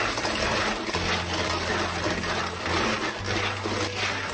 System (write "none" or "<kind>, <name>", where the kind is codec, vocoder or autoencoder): none